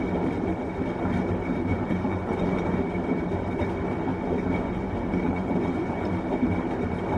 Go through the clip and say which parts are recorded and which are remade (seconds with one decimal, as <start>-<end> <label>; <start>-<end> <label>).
0.0-1.7 recorded; 1.7-2.8 remade; 2.8-4.1 recorded; 4.1-6.1 remade; 6.1-7.2 recorded